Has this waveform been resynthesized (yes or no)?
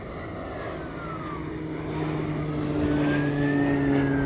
no